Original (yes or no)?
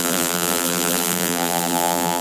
no